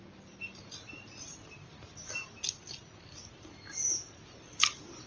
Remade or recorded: recorded